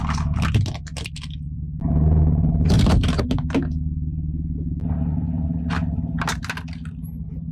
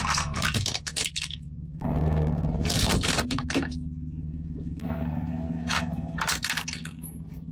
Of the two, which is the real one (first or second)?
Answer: first